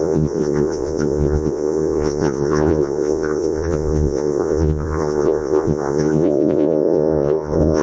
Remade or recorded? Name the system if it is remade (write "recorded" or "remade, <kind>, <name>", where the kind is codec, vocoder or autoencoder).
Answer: remade, vocoder, Vocos